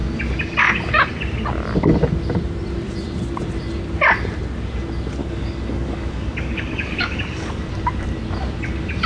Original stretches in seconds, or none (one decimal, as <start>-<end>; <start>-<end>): 0.0-5.2; 7.7-9.1